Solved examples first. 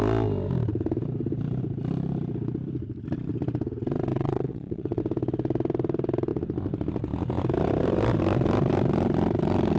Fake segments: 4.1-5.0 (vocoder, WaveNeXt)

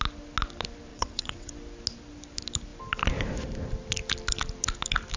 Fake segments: 0.9-1.5 (vocoder, WaveNeXt)

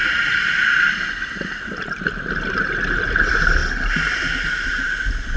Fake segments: none

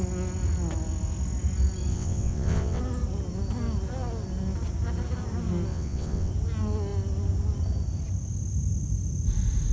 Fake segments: 1.9-2.8 (vocoder, WaveNeXt); 5.7-6.3

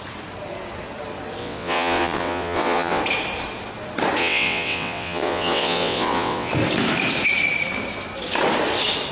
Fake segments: 1.4-3.0 (vocoder, WaveNeXt); 4.2-6.5

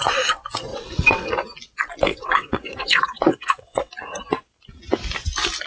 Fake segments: 0.7-1.3 (vocoder, WaveNeXt); 2.1-3.9